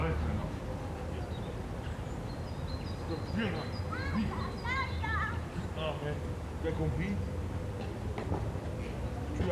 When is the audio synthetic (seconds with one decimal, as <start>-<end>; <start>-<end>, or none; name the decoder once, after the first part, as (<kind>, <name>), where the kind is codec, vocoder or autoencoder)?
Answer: 0.4-2.1 (vocoder, BigVGAN v2)